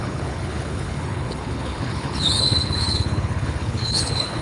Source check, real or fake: fake